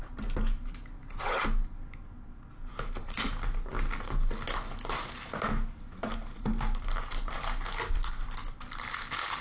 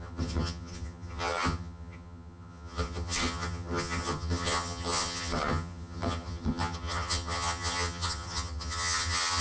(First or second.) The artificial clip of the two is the second